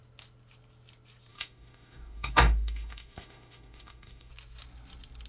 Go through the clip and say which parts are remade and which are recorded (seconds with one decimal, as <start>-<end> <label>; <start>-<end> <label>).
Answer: 0.0-1.3 recorded; 1.3-4.3 remade; 4.3-5.3 recorded